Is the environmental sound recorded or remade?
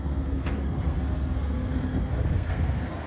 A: remade